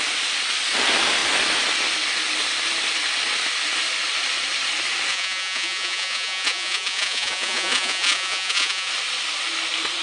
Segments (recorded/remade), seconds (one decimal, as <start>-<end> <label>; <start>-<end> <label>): 0.0-5.1 recorded; 5.1-8.9 remade; 8.9-10.0 recorded